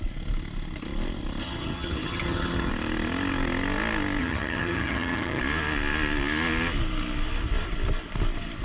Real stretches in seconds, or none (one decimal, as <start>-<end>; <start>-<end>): 0.0-1.4; 2.7-4.2; 5.4-8.6